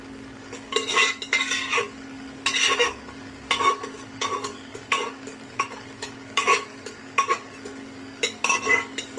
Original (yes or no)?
no